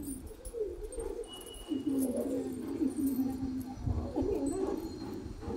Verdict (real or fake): real